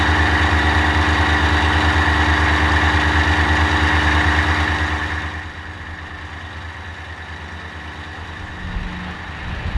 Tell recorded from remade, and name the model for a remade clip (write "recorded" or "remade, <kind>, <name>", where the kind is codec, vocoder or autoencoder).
recorded